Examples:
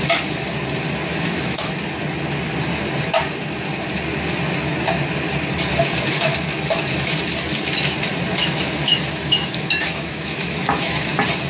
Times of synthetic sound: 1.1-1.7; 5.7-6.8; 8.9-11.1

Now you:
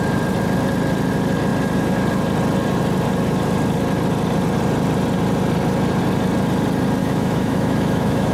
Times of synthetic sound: 7.0-8.3

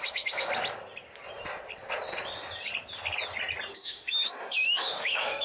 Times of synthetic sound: 0.0-0.5; 3.7-5.4

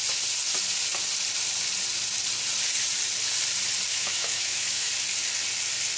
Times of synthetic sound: 3.9-4.9

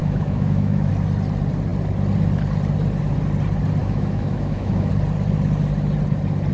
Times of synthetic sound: 0.0-0.9; 3.8-4.9

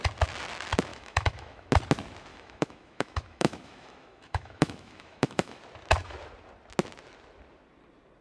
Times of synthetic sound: 0.9-1.7; 2.3-5.6

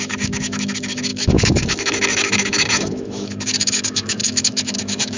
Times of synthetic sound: 0.0-5.2